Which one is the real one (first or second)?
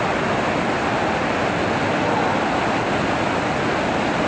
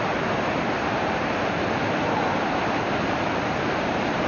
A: first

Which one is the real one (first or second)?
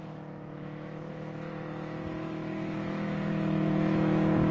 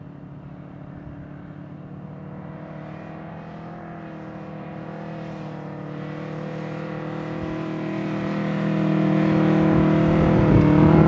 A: second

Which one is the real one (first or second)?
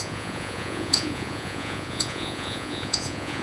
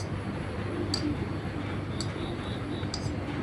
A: second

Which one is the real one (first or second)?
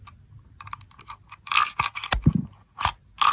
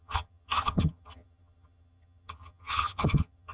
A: first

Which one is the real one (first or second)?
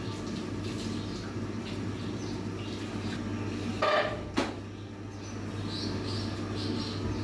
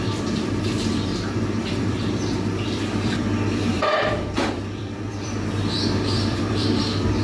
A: first